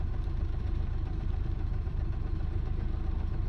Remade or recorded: remade